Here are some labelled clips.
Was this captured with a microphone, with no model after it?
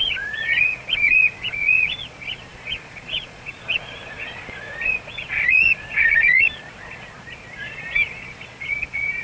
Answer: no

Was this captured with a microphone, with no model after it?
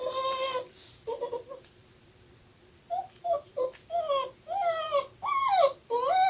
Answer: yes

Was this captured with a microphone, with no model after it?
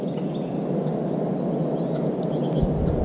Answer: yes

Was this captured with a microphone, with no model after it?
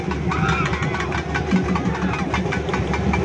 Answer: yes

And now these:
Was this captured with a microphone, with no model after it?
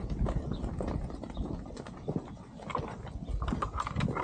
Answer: yes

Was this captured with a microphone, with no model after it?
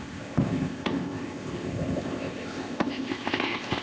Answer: no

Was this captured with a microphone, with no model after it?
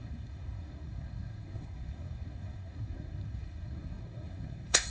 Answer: no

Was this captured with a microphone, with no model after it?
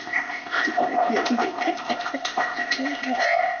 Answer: no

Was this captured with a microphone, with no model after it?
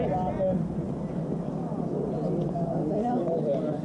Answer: yes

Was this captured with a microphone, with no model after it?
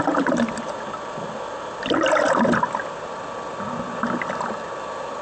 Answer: yes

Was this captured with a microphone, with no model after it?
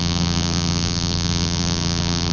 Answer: no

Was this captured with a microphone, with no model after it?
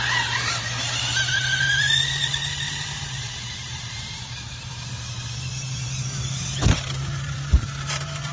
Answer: no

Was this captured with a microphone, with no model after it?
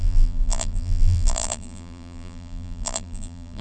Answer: no